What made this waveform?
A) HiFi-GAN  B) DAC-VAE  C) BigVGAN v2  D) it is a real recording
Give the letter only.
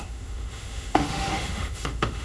B